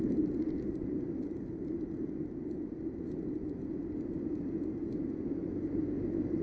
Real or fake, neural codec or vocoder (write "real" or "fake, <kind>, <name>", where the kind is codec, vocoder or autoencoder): real